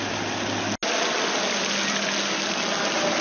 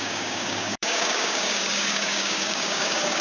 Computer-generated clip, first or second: second